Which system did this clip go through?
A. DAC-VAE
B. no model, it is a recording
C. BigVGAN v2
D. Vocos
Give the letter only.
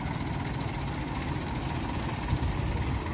B